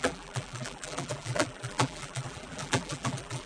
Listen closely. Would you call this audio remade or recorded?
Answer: remade